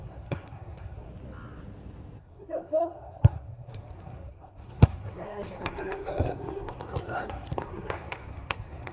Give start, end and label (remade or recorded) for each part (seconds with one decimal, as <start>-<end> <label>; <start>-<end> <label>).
0.0-1.1 remade; 1.1-2.2 recorded; 2.2-8.9 remade